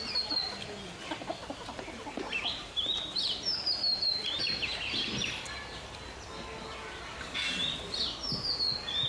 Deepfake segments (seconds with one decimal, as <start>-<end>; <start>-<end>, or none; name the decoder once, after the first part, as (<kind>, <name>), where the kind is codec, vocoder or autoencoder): 1.4-4.5 (vocoder, BigVGAN v2)